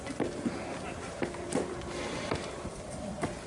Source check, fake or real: real